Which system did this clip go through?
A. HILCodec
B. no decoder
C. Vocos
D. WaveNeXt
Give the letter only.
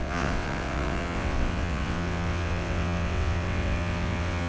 D